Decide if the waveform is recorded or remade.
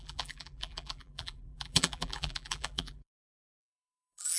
remade